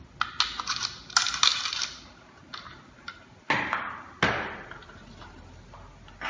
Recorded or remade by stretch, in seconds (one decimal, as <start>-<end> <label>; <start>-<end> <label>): 0.0-6.3 recorded